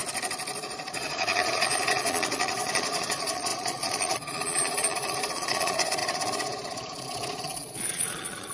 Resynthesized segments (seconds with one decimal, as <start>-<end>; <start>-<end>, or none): 0.6-8.5